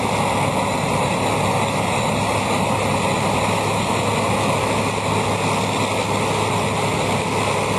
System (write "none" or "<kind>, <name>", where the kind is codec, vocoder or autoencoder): none